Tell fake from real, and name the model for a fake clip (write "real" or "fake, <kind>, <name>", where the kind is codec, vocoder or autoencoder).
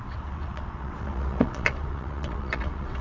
fake, vocoder, WaveNeXt